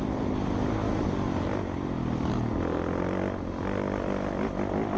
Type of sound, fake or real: real